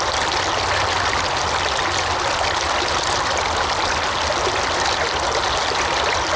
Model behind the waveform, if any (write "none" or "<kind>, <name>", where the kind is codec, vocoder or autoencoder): none